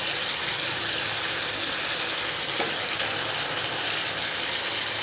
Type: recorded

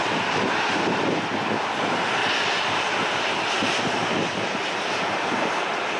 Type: recorded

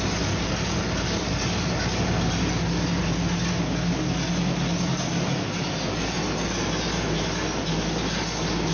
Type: recorded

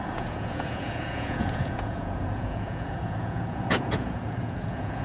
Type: remade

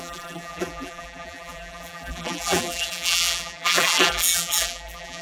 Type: remade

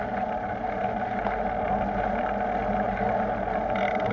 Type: recorded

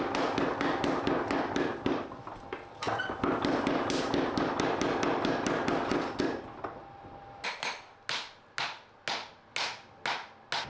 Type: recorded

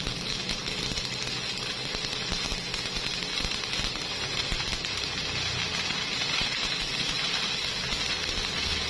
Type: recorded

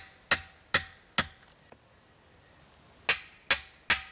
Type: recorded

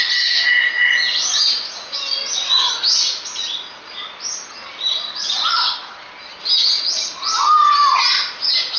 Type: recorded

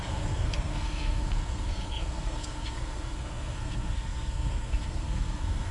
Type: remade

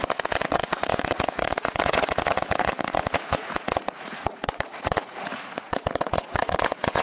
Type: remade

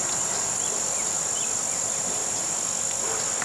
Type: recorded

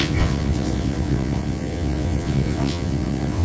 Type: remade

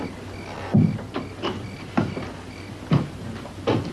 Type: recorded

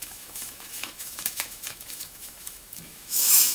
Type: remade